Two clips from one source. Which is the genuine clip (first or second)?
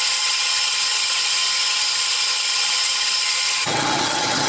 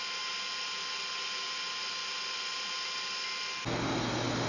second